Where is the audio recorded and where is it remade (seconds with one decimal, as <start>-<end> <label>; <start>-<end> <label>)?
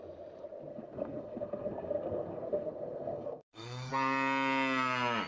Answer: 0.0-0.7 recorded; 0.7-3.9 remade; 3.9-5.3 recorded